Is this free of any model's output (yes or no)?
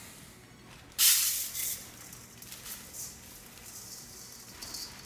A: yes